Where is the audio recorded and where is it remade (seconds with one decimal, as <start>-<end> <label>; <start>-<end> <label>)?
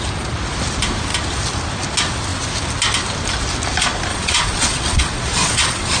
0.0-4.1 recorded; 4.1-6.0 remade